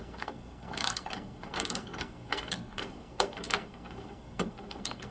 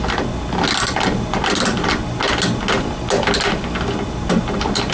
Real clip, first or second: second